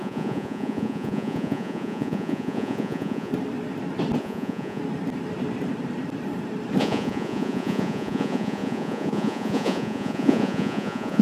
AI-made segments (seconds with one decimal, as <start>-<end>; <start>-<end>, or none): 0.0-3.3; 4.2-4.8; 6.8-11.2